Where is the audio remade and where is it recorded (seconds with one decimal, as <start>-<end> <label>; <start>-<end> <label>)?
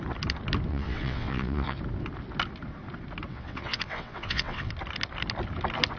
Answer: 0.0-0.7 recorded; 0.7-1.8 remade; 1.8-3.3 recorded; 3.3-4.7 remade; 4.7-6.0 recorded